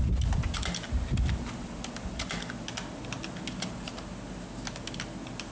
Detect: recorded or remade recorded